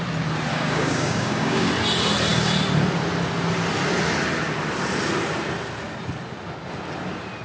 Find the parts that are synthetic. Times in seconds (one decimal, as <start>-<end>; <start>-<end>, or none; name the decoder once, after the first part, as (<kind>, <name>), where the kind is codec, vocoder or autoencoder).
0.5-1.7 (codec, DAC)